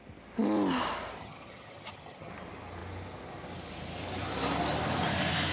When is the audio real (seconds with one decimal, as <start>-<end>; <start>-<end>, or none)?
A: 0.0-1.2; 2.3-5.5